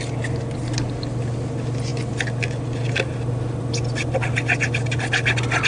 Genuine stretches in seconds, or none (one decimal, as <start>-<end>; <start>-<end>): 0.0-5.7